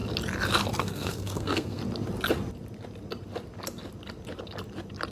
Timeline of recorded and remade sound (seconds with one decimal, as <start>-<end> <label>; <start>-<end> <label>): 0.0-0.8 recorded; 0.8-1.8 remade; 1.8-5.1 recorded